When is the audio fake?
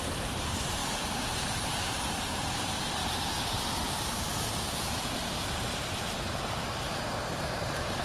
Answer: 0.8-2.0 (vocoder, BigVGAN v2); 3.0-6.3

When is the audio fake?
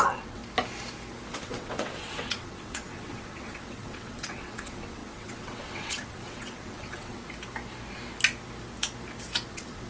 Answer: 0.0-0.4 (vocoder, WaveNeXt); 1.3-7.2; 9.5-9.9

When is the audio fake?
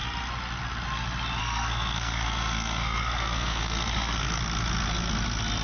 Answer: 1.4-4.4 (codec, SNAC)